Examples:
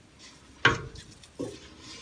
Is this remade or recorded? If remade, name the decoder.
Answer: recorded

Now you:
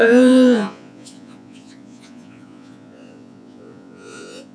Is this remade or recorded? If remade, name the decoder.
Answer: remade, vocoder, Vocos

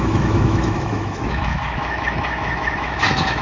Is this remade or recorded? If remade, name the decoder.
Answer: remade, autoencoder, DAC-VAE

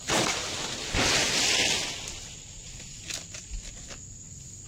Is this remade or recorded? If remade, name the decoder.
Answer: recorded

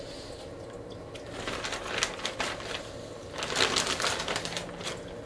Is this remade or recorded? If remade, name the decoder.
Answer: recorded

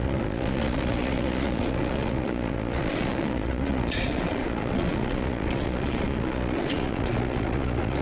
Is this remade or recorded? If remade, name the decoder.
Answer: remade, vocoder, Vocos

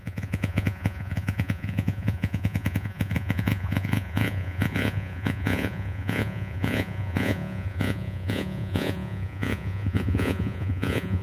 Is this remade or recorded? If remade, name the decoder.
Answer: remade, vocoder, Vocos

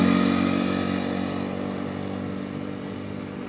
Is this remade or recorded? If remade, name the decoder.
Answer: recorded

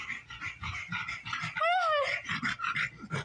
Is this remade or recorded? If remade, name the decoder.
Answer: recorded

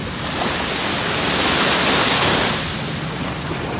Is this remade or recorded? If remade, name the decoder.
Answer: recorded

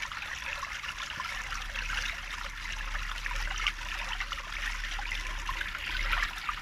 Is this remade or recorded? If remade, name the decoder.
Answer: recorded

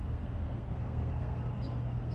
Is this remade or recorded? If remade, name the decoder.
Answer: remade, codec, SNAC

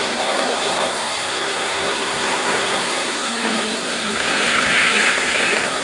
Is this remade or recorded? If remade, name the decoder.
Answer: remade, codec, SNAC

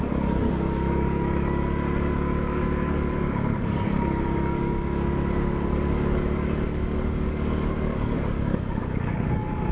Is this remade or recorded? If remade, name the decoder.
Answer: remade, codec, DAC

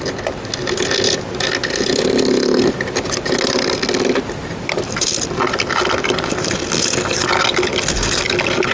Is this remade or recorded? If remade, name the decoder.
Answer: recorded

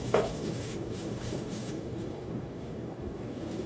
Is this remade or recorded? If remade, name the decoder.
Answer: remade, codec, DAC